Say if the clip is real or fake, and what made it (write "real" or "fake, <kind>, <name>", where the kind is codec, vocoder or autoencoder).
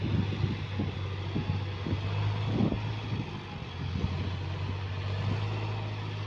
real